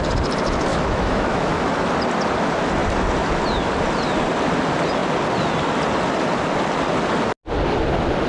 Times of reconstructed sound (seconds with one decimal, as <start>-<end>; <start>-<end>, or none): 0.7-1.9